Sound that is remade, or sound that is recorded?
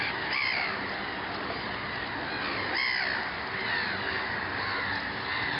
recorded